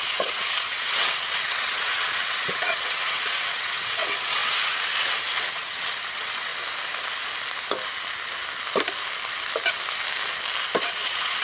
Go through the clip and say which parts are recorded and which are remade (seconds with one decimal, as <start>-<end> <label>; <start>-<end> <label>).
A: 0.0-6.5 remade; 6.5-10.8 recorded; 10.8-11.4 remade